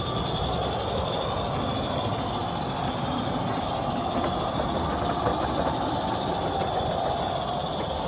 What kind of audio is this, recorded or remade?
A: recorded